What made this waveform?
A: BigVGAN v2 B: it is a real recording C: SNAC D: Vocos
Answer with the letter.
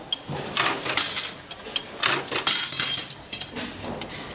B